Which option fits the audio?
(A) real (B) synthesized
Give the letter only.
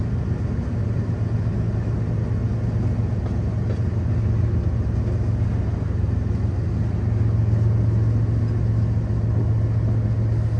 A